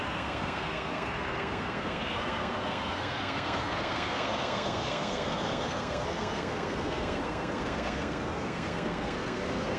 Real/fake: fake